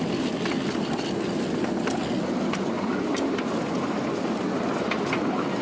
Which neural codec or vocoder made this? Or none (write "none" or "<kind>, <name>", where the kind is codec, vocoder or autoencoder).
none